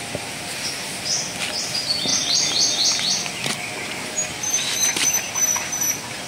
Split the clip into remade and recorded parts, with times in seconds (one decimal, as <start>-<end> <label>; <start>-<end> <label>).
0.0-6.3 recorded